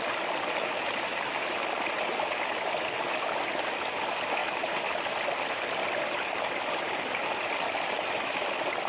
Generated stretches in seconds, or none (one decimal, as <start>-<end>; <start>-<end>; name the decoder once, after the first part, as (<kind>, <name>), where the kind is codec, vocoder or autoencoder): none